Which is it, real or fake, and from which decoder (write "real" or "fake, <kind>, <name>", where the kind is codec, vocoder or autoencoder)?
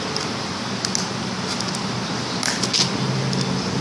real